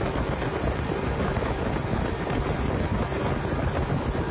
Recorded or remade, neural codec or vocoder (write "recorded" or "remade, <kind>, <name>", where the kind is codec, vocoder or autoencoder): recorded